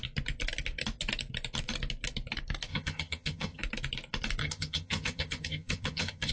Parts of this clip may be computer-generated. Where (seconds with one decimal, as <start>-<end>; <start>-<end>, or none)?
2.7-3.6; 4.4-6.3